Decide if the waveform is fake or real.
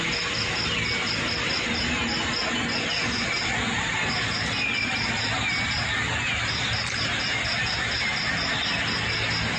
real